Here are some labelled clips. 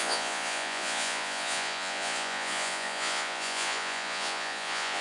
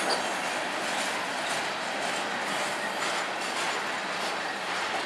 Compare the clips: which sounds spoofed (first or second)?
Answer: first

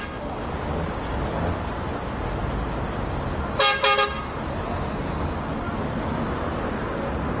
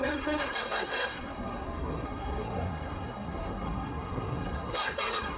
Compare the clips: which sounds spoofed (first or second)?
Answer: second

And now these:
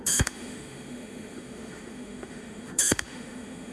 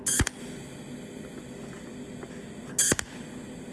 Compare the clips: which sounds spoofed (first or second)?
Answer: first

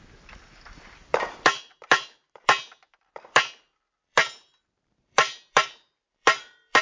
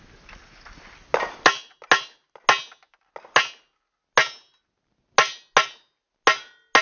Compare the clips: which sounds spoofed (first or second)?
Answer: first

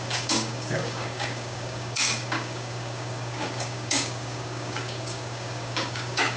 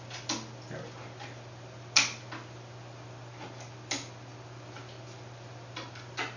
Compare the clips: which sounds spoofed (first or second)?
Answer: first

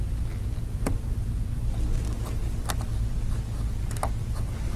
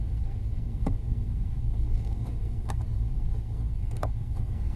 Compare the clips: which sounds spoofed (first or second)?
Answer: second